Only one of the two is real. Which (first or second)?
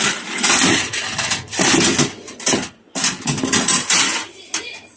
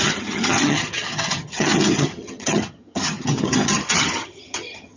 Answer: first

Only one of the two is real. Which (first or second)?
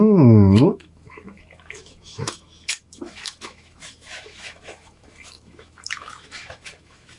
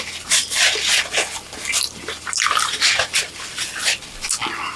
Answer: second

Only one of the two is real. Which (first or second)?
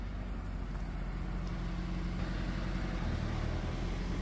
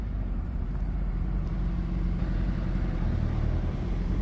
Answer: first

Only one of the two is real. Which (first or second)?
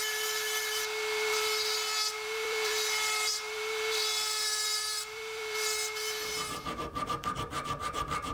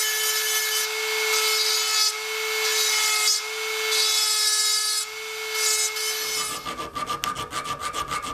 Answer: second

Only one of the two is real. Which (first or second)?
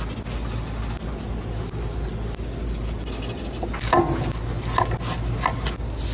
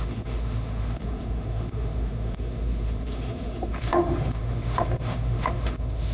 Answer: first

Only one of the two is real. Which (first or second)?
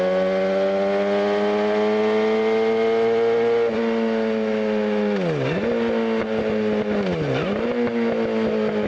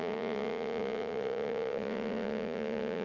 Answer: first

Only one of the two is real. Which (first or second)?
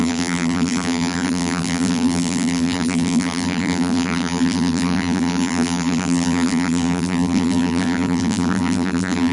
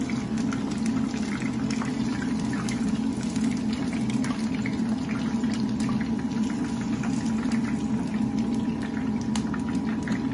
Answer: second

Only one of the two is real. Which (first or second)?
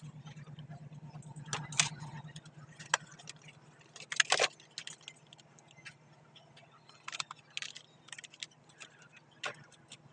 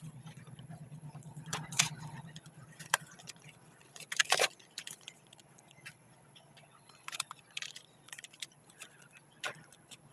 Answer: first